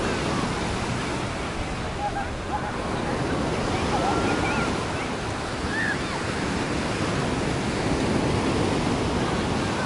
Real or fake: real